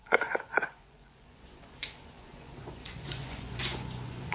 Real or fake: fake